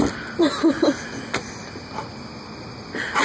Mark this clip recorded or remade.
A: recorded